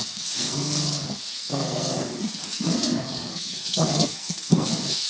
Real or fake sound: fake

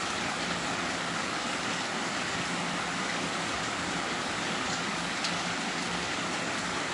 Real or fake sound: fake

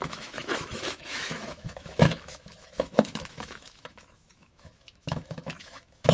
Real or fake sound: fake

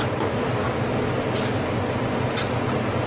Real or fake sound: real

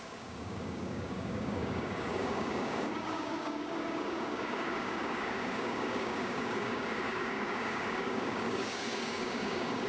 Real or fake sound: fake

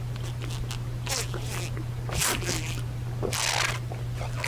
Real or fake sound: real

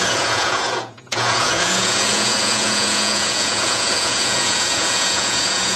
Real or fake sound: fake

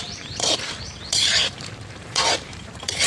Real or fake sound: fake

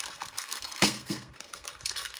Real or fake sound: fake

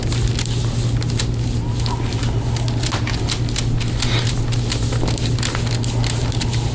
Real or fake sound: real